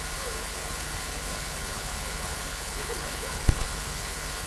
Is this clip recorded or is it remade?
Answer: remade